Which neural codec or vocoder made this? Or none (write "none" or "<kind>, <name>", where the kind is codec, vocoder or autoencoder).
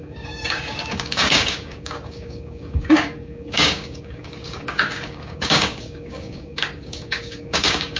codec, DAC